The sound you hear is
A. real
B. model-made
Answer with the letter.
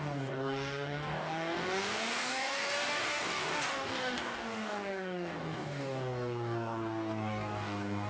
B